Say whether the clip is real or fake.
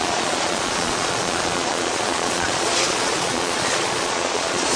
fake